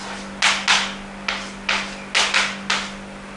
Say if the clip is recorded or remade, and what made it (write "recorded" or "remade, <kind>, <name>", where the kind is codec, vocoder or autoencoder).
recorded